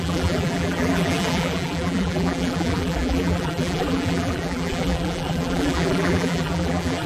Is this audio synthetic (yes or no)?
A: yes